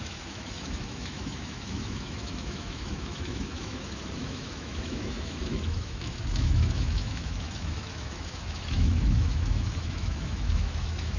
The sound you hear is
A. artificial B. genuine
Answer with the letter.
A